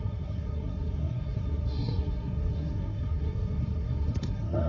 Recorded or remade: remade